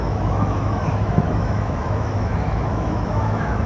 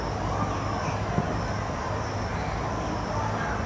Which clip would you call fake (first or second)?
first